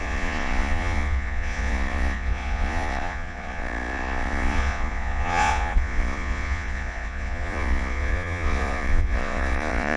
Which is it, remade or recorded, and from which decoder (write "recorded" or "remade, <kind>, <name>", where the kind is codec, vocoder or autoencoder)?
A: remade, vocoder, Vocos